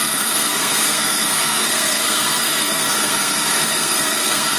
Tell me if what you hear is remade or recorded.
remade